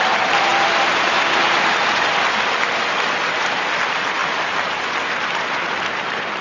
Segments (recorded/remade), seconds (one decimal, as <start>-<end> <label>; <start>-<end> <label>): 0.0-6.4 recorded